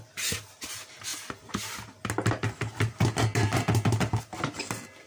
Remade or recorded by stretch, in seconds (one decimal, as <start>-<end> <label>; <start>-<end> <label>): 0.0-5.1 recorded